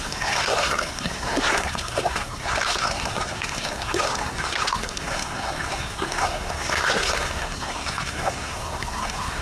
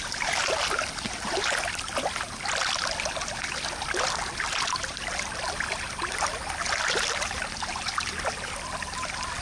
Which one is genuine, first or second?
second